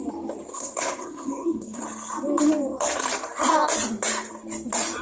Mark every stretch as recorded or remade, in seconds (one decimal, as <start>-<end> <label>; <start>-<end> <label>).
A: 0.0-0.5 recorded; 0.5-1.8 remade; 1.8-5.0 recorded